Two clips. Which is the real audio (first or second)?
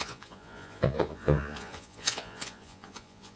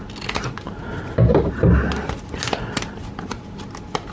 second